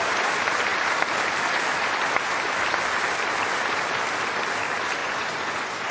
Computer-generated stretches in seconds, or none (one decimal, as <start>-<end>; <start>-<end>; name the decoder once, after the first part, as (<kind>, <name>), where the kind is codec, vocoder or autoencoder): 5.0-5.9 (vocoder, Vocos)